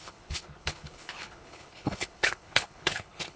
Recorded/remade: remade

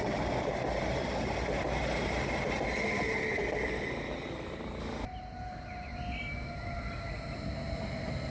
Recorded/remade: recorded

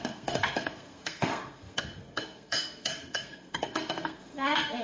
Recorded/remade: remade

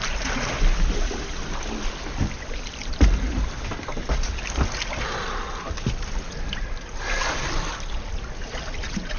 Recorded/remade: recorded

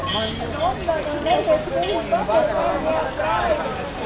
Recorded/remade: recorded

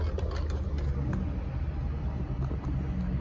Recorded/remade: recorded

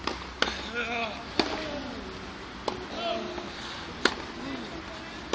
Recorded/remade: recorded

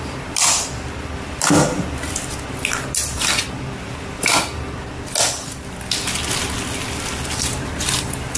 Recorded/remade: recorded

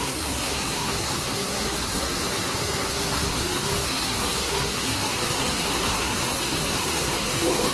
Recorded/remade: remade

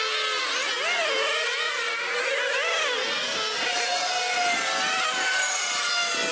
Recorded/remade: recorded